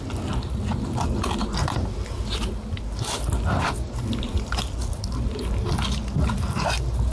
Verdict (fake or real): real